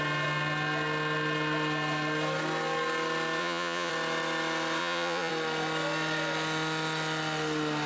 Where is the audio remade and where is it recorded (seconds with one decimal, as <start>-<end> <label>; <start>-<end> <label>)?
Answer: 0.0-3.4 recorded; 3.4-3.9 remade; 3.9-4.8 recorded; 4.8-5.3 remade; 5.3-7.9 recorded